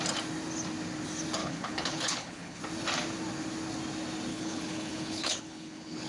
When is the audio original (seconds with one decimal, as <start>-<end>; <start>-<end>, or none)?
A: 0.0-1.4; 2.6-4.3